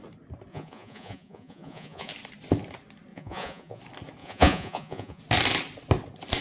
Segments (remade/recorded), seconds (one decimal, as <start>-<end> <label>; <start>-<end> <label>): 0.0-0.5 recorded; 0.5-2.1 remade; 2.1-3.1 recorded; 3.1-3.8 remade; 3.8-4.2 recorded; 4.2-5.2 remade; 5.2-6.4 recorded